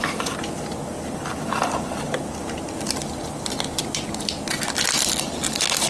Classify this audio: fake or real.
real